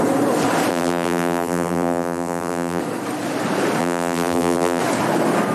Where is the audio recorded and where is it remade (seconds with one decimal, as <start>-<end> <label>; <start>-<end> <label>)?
0.0-0.7 recorded; 0.7-2.8 remade; 2.8-3.8 recorded; 3.8-4.8 remade; 4.8-5.5 recorded

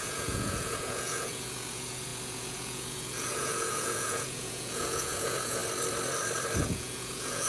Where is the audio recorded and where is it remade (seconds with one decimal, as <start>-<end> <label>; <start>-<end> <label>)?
0.0-5.6 remade; 5.6-6.6 recorded; 6.6-7.5 remade

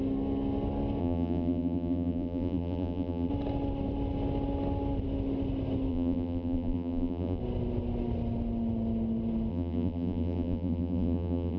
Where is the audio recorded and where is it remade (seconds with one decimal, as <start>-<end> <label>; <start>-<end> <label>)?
0.0-1.0 recorded; 1.0-3.3 remade; 3.3-5.9 recorded; 5.9-7.4 remade; 7.4-9.5 recorded; 9.5-11.6 remade

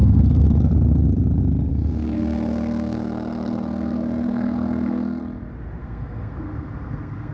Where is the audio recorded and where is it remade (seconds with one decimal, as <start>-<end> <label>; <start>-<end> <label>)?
0.0-0.7 remade; 0.7-1.7 recorded; 1.7-5.2 remade; 5.2-5.8 recorded; 5.8-7.3 remade